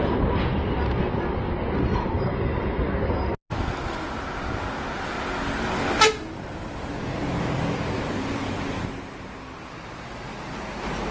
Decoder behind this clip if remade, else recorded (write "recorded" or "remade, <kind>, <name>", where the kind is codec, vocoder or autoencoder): recorded